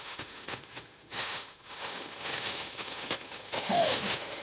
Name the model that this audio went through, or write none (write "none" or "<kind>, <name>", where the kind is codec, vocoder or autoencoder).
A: autoencoder, DAC-VAE